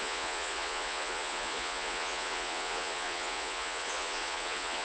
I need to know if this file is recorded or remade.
remade